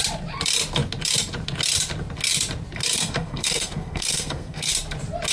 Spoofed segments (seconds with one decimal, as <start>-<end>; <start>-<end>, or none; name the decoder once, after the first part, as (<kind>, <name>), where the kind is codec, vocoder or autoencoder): 3.0-4.7 (codec, SNAC)